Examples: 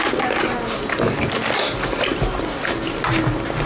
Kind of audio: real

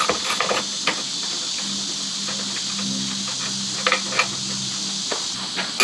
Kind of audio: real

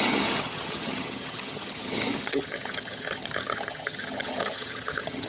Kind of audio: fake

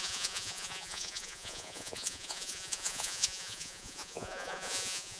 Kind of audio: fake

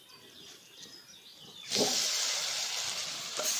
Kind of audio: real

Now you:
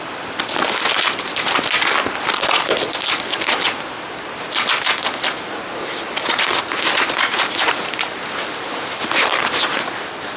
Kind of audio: fake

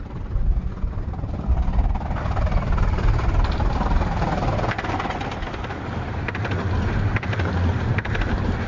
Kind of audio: real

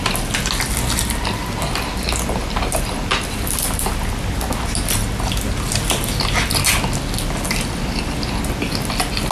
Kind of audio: real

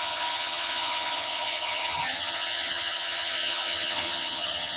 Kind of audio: fake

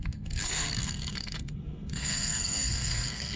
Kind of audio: fake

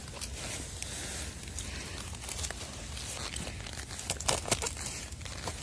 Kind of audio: real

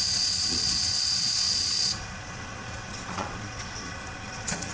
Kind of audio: fake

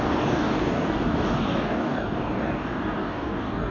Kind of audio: fake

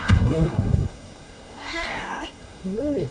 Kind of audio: fake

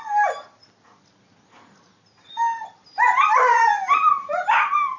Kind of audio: real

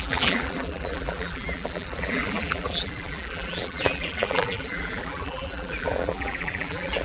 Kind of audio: fake